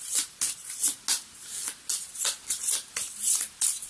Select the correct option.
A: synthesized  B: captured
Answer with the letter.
B